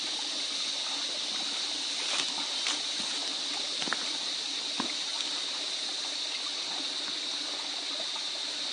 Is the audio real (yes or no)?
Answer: yes